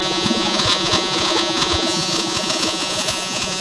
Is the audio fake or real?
fake